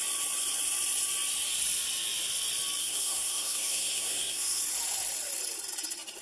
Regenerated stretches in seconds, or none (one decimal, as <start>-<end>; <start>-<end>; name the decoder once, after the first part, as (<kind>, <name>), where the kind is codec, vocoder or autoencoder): 2.8-4.6 (codec, SNAC)